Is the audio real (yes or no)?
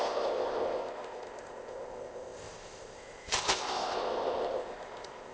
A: no